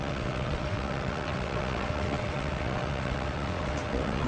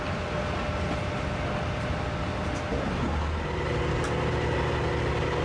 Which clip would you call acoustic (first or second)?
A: second